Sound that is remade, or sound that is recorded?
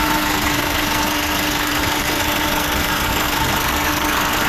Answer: remade